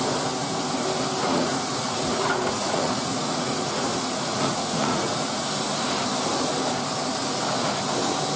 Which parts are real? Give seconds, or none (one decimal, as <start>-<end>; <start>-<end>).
0.0-1.2; 5.5-8.4